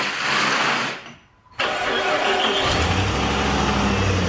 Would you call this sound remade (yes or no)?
no